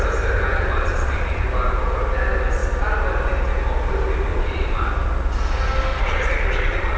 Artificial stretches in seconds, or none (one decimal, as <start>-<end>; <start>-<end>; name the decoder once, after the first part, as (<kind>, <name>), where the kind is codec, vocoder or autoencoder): 0.5-1.4 (vocoder, Vocos); 4.3-4.8; 5.9-7.0